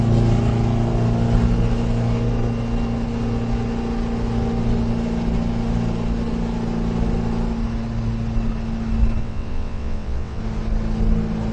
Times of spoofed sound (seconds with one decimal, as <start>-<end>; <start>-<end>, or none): 9.2-10.4